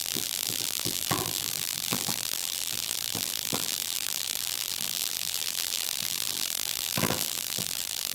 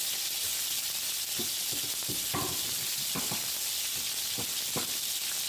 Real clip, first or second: second